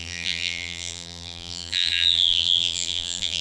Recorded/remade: remade